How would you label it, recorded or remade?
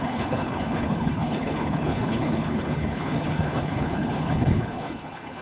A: remade